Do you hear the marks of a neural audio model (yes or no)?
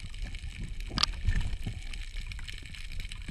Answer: no